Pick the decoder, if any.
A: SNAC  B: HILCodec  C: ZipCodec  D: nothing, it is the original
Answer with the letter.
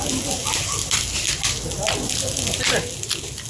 D